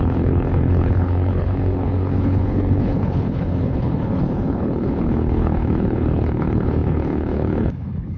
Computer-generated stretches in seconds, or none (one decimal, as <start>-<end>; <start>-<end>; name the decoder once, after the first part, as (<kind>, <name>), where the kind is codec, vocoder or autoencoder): 0.0-8.2 (codec, HILCodec)